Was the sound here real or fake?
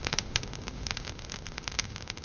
fake